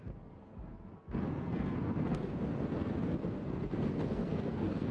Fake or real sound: fake